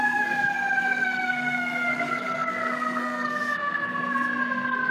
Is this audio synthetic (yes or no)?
yes